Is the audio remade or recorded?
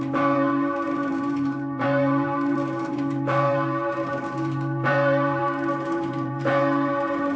remade